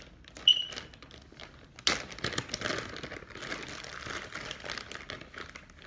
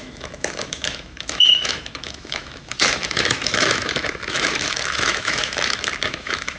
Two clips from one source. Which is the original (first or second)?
first